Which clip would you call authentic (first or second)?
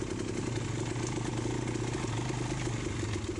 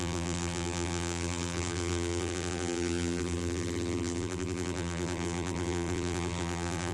first